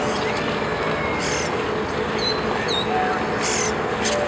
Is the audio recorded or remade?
recorded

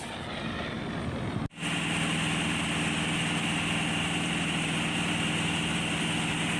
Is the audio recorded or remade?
recorded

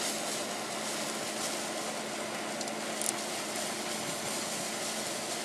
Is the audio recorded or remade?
recorded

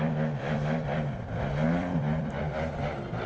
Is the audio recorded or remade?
remade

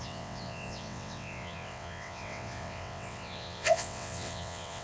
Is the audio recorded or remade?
remade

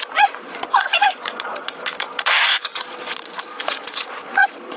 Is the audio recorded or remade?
remade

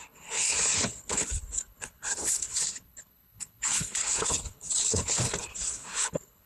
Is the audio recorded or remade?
remade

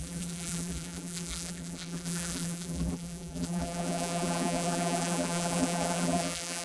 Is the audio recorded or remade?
remade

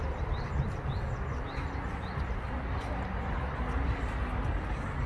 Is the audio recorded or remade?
recorded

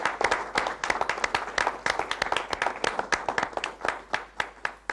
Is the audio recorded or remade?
recorded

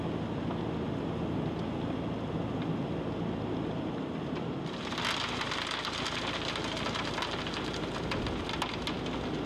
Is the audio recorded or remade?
recorded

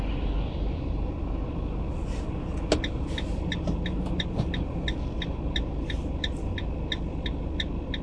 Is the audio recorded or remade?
recorded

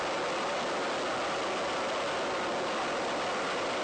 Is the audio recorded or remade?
recorded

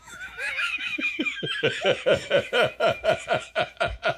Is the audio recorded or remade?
remade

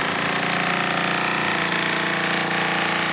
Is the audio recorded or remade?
recorded